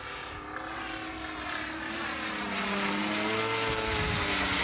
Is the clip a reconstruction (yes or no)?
no